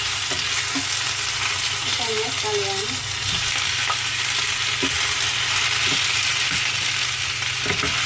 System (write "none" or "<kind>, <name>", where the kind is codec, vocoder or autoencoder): none